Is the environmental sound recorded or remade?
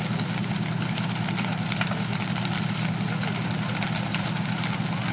recorded